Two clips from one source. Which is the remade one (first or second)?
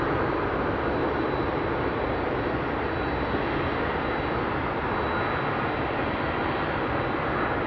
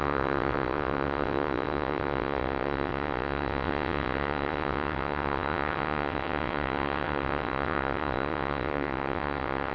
second